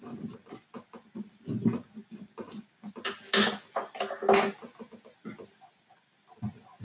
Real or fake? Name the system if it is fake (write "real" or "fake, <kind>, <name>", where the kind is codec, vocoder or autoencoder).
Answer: real